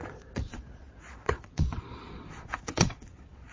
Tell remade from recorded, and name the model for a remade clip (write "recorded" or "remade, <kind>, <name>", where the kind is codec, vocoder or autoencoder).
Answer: remade, vocoder, Vocos